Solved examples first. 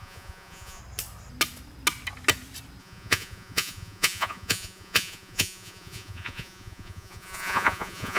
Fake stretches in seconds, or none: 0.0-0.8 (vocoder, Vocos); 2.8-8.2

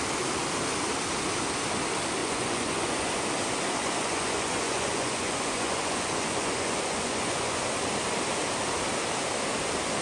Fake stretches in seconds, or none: 2.2-3.2 (vocoder, Vocos); 3.8-7.6

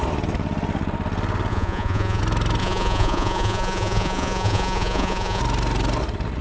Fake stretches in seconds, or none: 1.5-2.2 (vocoder, Vocos); 2.6-5.4

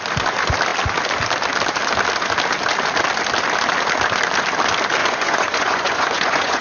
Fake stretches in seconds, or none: 5.0-6.6 (vocoder, Vocos)

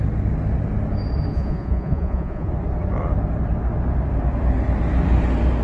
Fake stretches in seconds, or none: 1.3-2.5 (vocoder, Vocos)